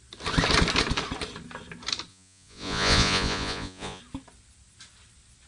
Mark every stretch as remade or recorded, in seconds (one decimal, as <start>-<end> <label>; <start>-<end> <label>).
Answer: 0.0-2.1 recorded; 2.1-4.0 remade; 4.0-5.5 recorded